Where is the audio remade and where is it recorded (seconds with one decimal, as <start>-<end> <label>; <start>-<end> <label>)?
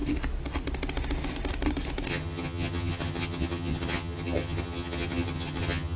0.0-2.1 recorded; 2.1-6.0 remade